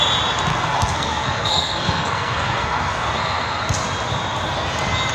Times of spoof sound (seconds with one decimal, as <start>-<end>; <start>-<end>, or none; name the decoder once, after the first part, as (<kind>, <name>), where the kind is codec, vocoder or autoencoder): 0.5-3.6 (codec, SNAC)